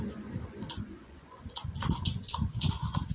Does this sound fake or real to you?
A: fake